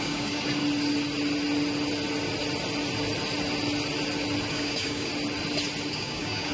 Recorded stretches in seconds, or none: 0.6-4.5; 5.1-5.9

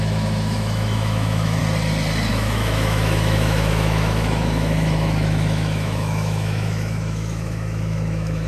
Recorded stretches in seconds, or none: 1.6-2.3

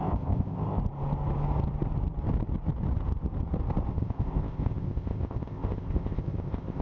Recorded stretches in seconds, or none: 0.8-3.9

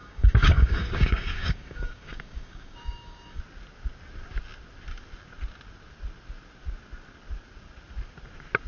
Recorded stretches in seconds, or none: 3.4-8.7